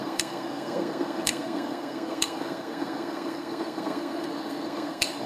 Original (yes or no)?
no